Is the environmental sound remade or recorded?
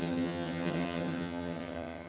remade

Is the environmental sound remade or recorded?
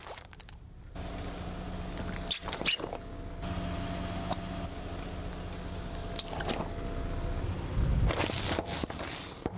recorded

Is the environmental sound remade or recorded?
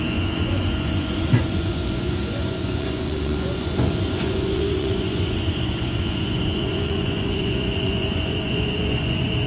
remade